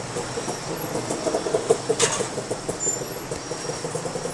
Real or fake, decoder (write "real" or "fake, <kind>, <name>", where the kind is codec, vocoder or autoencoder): real